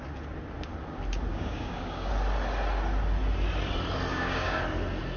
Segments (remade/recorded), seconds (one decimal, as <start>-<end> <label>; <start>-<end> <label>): 0.0-1.3 recorded; 1.3-2.1 remade; 2.1-4.1 recorded; 4.1-4.6 remade; 4.6-5.2 recorded